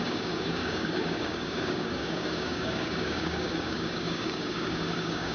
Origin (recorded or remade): remade